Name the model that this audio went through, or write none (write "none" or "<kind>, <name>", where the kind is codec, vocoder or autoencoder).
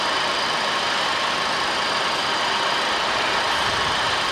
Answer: none